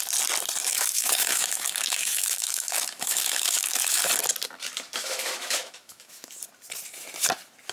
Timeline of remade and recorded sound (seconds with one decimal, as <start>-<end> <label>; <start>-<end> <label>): 0.0-0.6 recorded; 0.6-4.0 remade; 4.0-5.0 recorded; 5.0-6.4 remade; 6.4-7.7 recorded